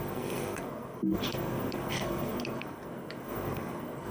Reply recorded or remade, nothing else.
remade